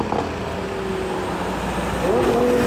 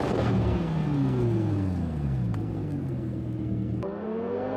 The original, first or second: first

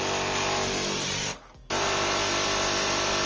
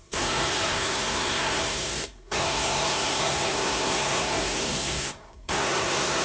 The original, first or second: first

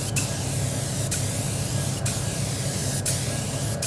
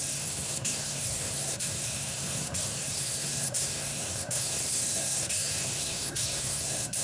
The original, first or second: first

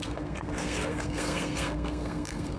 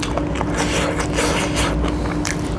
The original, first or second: second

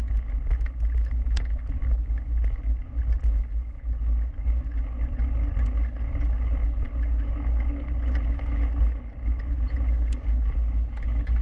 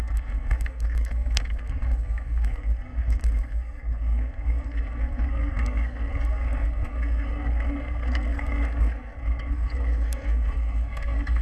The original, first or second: first